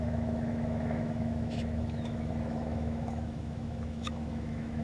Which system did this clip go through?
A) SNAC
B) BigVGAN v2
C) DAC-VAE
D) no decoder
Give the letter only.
C